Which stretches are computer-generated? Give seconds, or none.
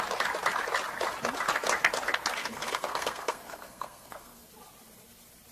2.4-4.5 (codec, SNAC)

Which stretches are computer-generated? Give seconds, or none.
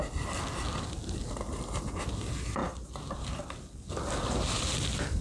none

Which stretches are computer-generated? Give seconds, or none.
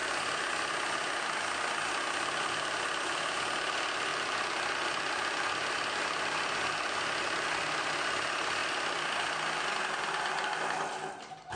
4.1-7.9 (vocoder, BigVGAN v2)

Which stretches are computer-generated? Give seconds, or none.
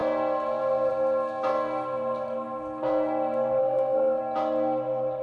3.6-4.2 (codec, SNAC)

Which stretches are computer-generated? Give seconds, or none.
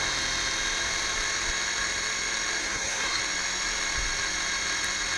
2.6-3.2 (codec, SNAC)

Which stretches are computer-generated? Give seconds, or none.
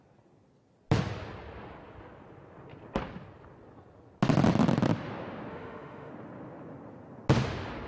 5.5-6.1 (autoencoder, DAC-VAE)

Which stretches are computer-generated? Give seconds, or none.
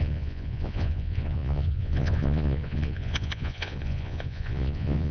0.0-5.1 (vocoder, Vocos)